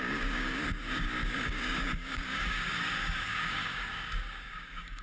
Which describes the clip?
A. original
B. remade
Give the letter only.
B